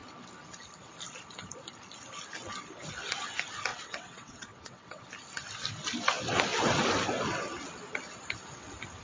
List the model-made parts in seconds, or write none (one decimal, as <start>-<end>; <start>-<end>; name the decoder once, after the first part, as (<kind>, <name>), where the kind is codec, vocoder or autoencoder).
3.7-5.0 (vocoder, WaveNeXt)